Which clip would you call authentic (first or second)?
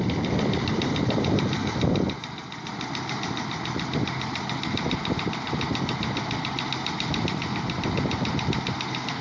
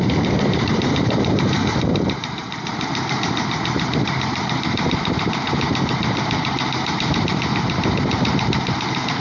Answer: first